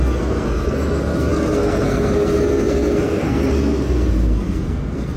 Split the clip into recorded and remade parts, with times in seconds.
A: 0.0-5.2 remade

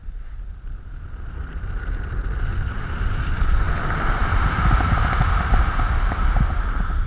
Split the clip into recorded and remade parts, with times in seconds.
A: 0.0-4.2 recorded; 4.2-5.0 remade; 5.0-7.1 recorded

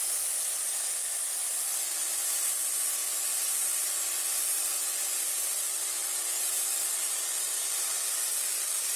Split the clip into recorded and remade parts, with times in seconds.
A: 0.0-9.0 recorded

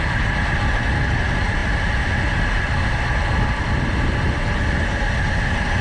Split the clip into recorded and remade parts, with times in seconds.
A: 0.0-5.8 recorded

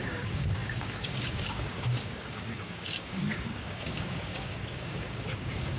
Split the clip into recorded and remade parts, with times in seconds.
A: 0.0-5.8 remade

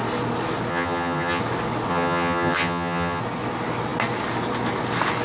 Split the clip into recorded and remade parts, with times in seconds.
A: 0.0-0.7 recorded; 0.7-1.4 remade; 1.4-1.9 recorded; 1.9-3.2 remade; 3.2-5.2 recorded

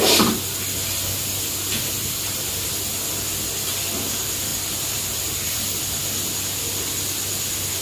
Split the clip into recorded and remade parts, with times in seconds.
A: 0.0-2.0 recorded; 2.0-2.7 remade; 2.7-4.5 recorded; 4.5-5.8 remade; 5.8-7.8 recorded